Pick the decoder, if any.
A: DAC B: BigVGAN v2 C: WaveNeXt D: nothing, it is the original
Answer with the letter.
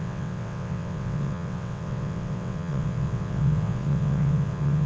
C